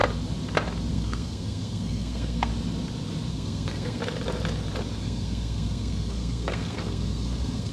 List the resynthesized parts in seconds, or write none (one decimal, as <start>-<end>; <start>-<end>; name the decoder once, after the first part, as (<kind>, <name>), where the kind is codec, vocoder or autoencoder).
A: 0.9-2.5 (codec, SNAC); 3.3-4.0; 5.0-7.7